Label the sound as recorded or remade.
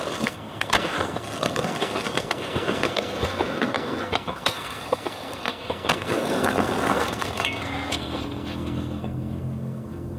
remade